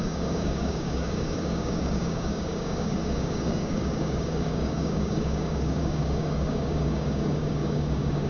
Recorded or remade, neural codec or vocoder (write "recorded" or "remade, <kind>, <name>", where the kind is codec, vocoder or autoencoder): remade, codec, DAC